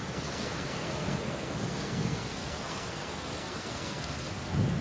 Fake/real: fake